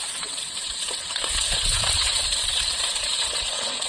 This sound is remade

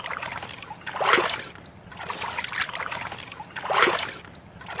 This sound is recorded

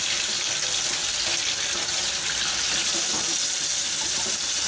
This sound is recorded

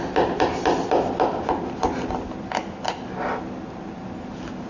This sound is recorded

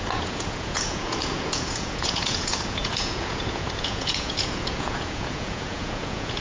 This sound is remade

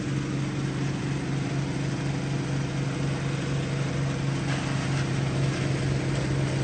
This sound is recorded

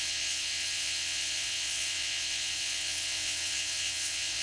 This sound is remade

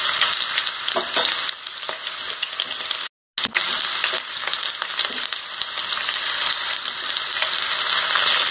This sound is recorded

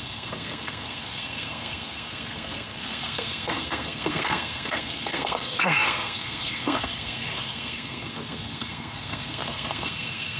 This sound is remade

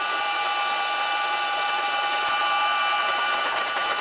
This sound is remade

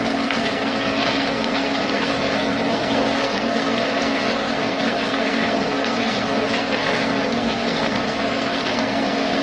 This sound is remade